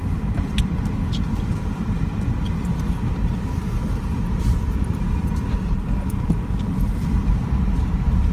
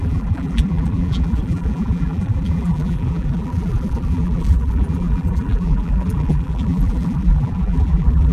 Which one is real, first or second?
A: first